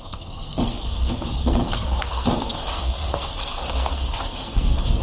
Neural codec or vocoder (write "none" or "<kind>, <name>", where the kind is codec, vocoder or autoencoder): codec, SNAC